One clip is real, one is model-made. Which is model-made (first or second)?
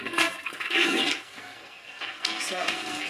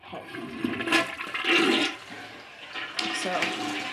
first